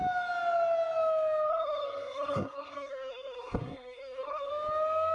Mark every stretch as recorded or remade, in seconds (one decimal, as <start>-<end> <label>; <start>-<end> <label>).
0.0-1.5 recorded; 1.5-4.5 remade; 4.5-5.1 recorded